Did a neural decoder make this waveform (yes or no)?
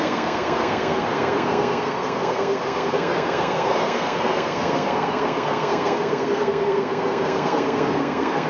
yes